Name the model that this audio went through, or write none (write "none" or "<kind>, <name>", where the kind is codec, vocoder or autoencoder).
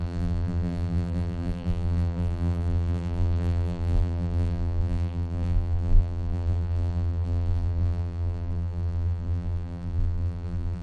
vocoder, BigVGAN v2